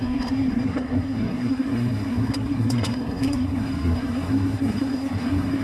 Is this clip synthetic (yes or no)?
yes